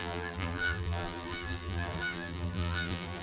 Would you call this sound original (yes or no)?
no